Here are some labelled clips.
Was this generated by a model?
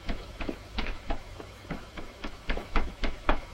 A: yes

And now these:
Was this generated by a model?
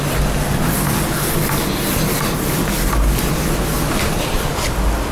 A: no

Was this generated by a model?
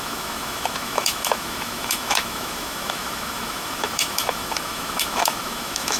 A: yes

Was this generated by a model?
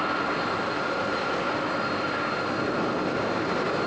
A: no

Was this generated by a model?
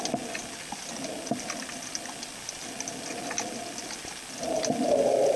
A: no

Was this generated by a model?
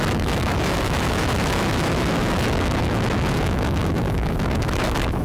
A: yes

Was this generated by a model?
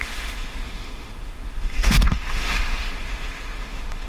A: yes